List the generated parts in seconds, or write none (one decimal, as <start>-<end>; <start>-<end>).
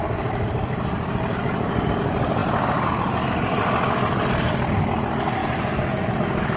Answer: 5.4-6.1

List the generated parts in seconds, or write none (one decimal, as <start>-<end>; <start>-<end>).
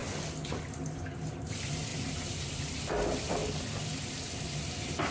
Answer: 1.9-2.6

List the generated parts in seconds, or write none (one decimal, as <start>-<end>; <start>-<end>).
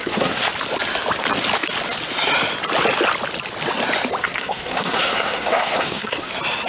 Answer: 0.0-0.5; 4.2-6.3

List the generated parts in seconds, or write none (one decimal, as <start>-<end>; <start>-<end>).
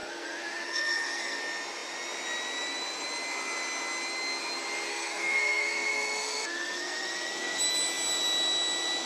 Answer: 0.0-1.4; 4.9-7.6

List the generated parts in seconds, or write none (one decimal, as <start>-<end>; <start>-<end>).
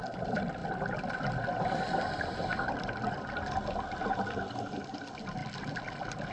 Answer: 0.0-0.6; 1.8-5.4